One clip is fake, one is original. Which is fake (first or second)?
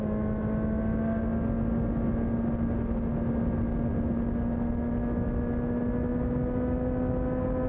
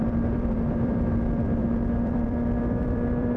second